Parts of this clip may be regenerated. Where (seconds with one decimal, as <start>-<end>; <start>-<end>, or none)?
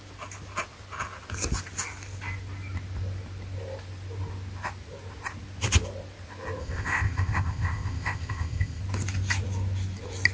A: 6.6-8.8